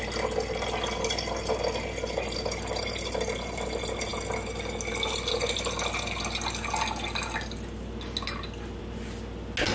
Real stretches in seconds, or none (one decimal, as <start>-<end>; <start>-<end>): 0.0-9.7